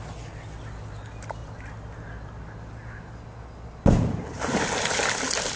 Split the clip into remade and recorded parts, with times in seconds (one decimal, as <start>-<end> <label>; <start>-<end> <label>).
0.0-5.6 recorded